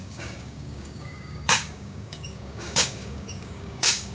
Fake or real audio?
fake